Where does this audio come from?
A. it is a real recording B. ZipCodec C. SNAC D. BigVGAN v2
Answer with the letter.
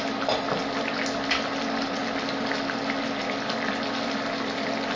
A